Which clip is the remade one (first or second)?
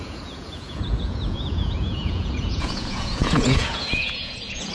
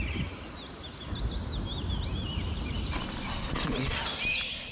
first